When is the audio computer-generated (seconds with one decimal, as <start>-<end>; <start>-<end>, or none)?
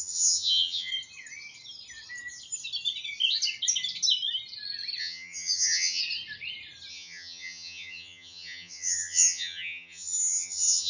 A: 0.0-0.9; 5.0-6.0; 6.9-10.9